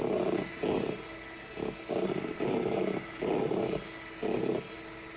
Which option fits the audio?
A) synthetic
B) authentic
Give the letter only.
B